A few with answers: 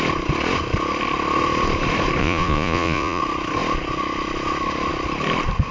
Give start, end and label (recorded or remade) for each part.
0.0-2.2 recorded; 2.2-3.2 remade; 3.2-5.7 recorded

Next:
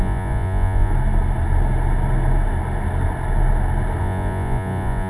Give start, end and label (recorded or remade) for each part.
0.0-0.9 remade; 0.9-4.0 recorded; 4.0-5.1 remade

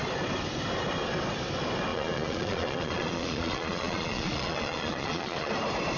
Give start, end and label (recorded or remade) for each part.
0.0-1.9 recorded; 1.9-5.5 remade; 5.5-6.0 recorded

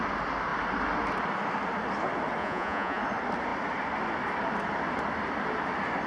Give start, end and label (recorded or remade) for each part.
0.0-2.4 recorded; 2.4-3.0 remade; 3.0-6.1 recorded

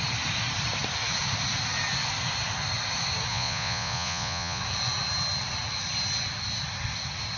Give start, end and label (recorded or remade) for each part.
0.0-3.3 recorded; 3.3-4.6 remade; 4.6-7.4 recorded